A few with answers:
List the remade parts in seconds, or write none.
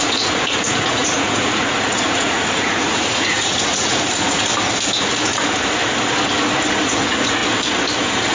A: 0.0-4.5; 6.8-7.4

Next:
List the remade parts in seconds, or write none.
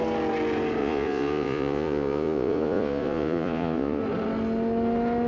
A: 0.8-4.0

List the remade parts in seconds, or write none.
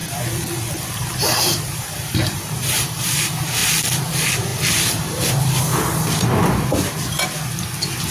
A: 0.7-3.6; 4.1-5.7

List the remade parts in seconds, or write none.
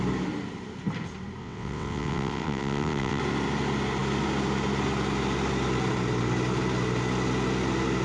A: 1.4-3.2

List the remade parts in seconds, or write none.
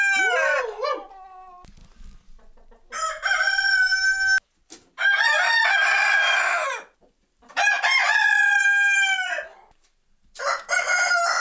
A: none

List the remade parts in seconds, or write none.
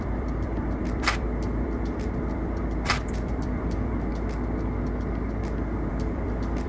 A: 0.0-4.1; 5.9-6.7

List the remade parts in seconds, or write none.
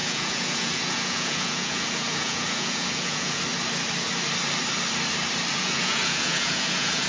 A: 0.0-3.4; 5.6-7.1